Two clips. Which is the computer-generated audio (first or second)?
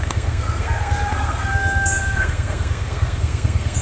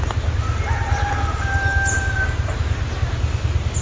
first